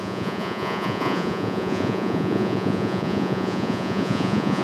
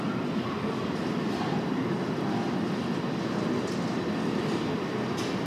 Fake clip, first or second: first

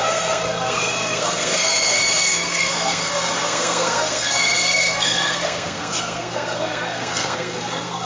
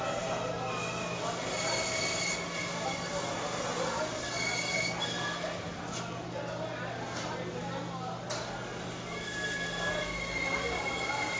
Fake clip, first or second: first